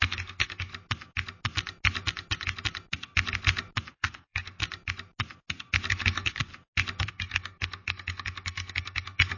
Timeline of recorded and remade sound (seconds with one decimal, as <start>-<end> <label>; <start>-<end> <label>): 0.0-0.7 remade; 0.7-3.9 recorded; 3.9-4.6 remade; 4.6-5.9 recorded; 5.9-6.5 remade; 6.5-7.1 recorded; 7.1-9.4 remade